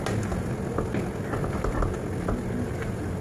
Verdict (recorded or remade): recorded